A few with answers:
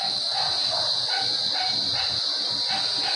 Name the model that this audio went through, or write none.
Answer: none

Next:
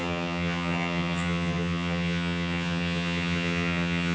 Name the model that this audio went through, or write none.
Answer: vocoder, HiFi-GAN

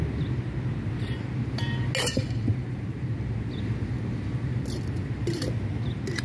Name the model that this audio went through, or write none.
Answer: none